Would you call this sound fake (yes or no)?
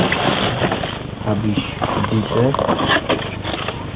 no